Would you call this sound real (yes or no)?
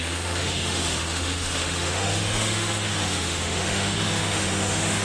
no